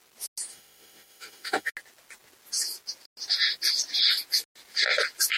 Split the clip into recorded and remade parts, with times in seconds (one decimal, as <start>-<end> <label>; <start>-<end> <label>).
0.0-0.5 recorded; 0.5-1.7 remade; 1.7-5.4 recorded